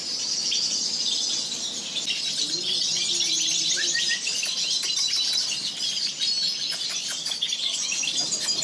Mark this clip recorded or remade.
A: recorded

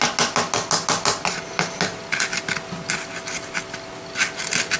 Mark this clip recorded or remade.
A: recorded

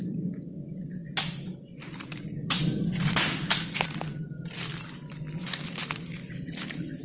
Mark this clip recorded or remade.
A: recorded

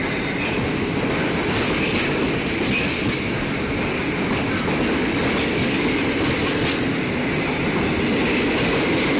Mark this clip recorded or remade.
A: recorded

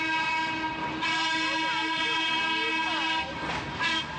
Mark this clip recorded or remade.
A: recorded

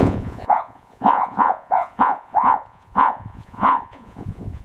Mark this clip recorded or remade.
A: remade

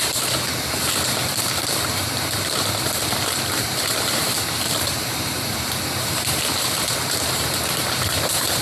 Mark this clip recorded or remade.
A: remade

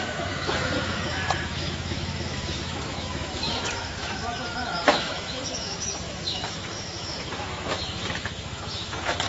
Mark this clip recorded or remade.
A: remade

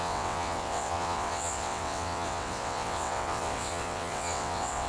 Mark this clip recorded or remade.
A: remade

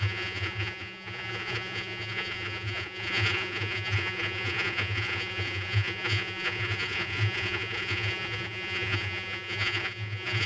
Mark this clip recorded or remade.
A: remade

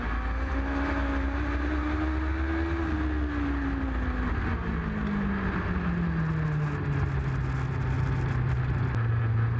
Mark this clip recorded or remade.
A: recorded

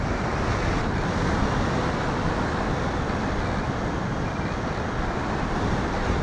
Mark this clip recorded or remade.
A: recorded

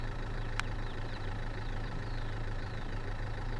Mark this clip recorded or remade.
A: remade